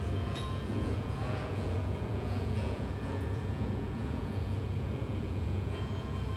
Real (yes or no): no